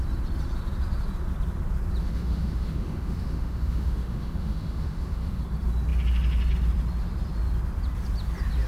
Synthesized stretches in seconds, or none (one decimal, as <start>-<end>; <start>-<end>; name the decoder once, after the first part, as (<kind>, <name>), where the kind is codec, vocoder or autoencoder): 2.0-5.4 (autoencoder, DAC-VAE)